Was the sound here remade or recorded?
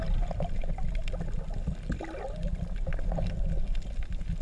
recorded